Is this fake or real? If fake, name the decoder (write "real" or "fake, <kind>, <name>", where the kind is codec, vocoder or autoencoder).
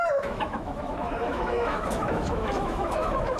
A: fake, autoencoder, DAC-VAE